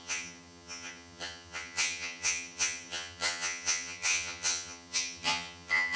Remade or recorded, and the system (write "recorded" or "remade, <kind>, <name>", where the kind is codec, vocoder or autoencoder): remade, vocoder, HiFi-GAN